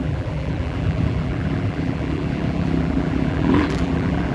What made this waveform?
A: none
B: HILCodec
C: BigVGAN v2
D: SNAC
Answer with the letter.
C